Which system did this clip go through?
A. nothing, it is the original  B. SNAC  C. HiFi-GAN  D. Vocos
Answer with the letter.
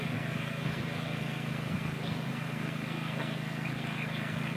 B